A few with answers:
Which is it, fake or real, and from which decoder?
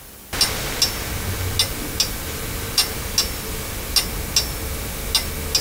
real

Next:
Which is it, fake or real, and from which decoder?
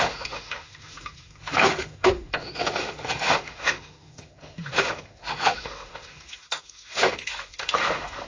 fake, autoencoder, DAC-VAE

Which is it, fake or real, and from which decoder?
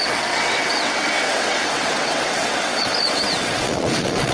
fake, vocoder, WaveNeXt